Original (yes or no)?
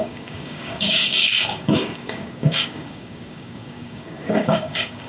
no